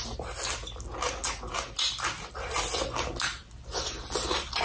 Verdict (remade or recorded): recorded